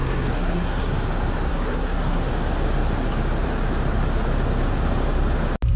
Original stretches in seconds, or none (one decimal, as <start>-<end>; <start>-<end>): 0.9-1.5; 2.3-5.8